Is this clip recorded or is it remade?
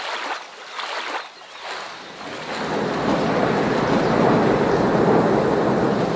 recorded